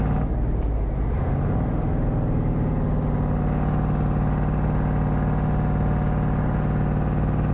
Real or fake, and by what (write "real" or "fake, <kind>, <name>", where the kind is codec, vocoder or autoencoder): real